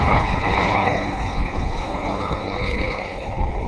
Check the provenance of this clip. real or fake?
fake